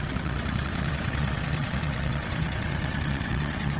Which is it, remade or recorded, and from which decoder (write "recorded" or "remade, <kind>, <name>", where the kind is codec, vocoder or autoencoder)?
remade, vocoder, WaveNeXt